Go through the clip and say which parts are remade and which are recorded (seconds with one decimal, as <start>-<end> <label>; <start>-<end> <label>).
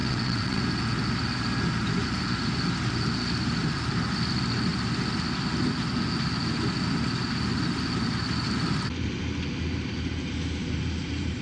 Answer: 0.0-0.6 remade; 0.6-11.4 recorded